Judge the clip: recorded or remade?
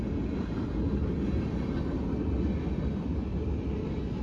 recorded